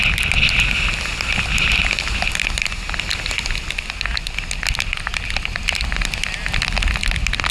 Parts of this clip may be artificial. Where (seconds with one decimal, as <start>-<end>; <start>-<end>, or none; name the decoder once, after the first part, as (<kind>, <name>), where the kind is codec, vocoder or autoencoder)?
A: none